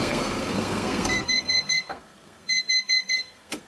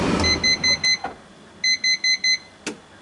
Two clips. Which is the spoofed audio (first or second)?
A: first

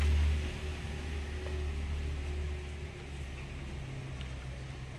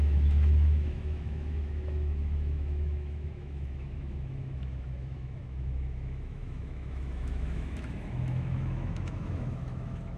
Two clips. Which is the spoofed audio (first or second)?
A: second